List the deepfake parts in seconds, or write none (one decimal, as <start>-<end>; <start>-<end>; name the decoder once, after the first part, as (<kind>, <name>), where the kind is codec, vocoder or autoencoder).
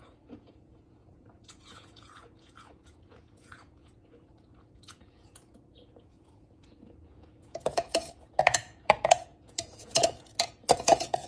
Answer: 0.0-11.3 (vocoder, Vocos)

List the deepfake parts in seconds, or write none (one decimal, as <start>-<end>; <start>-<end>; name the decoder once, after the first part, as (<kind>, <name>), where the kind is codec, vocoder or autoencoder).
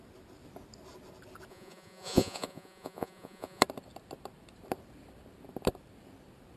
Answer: 1.5-3.6 (vocoder, Vocos)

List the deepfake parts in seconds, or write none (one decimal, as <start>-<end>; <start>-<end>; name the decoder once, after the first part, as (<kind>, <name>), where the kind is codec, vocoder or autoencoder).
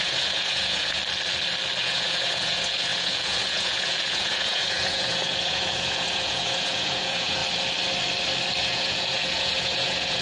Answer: 0.0-1.0 (vocoder, Vocos); 1.8-7.4; 8.6-10.2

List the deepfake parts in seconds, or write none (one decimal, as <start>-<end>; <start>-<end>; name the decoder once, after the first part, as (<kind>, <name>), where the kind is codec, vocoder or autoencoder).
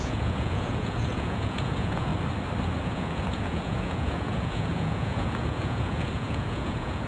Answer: 0.0-2.1 (vocoder, Vocos); 2.8-7.1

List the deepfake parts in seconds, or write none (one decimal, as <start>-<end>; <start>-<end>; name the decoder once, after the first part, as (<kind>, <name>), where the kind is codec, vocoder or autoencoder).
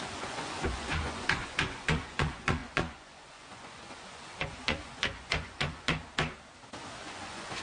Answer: 0.0-6.0 (vocoder, Vocos); 7.0-7.6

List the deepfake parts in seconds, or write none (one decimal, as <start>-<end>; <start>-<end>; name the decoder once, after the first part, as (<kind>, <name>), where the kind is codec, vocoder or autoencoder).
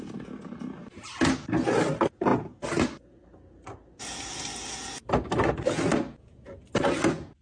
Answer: none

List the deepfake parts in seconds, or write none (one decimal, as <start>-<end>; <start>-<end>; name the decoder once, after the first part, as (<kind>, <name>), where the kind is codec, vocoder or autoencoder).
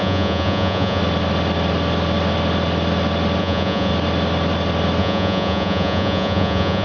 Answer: 0.0-1.0 (vocoder, Vocos); 3.4-3.9; 5.0-6.8